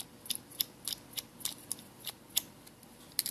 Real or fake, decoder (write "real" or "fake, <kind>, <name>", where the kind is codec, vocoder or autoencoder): real